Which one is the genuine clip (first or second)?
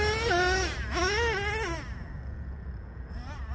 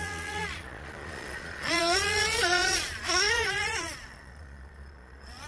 first